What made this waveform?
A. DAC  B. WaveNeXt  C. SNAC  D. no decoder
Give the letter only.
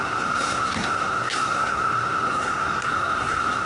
C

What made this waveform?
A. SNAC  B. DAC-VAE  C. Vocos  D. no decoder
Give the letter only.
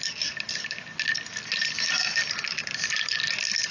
D